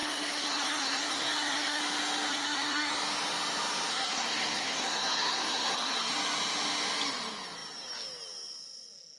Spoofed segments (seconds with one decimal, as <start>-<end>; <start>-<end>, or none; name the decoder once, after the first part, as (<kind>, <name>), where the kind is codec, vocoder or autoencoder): 0.0-1.8 (codec, SNAC); 2.3-2.9; 3.9-6.1